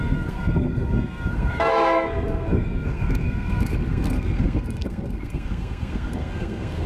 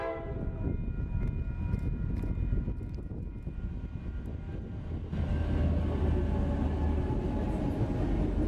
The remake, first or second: first